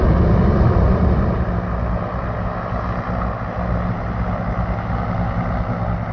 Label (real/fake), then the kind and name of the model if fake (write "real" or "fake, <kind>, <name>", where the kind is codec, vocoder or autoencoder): real